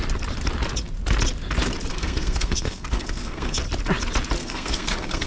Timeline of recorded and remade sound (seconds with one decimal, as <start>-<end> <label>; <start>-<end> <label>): 0.0-1.9 recorded; 1.9-3.6 remade; 3.6-4.4 recorded; 4.4-5.3 remade